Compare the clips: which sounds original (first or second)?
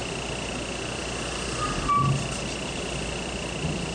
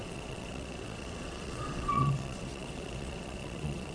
first